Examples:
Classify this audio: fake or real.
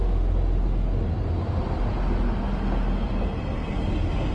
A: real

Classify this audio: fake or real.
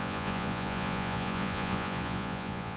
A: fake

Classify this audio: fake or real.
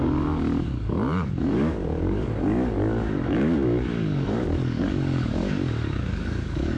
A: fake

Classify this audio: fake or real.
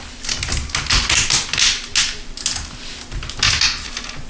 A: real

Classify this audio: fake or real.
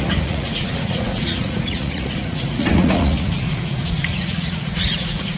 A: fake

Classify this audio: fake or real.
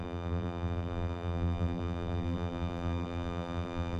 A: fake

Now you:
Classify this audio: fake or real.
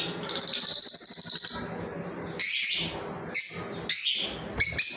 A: real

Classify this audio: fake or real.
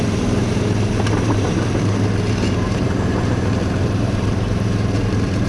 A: fake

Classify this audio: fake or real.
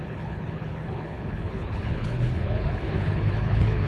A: fake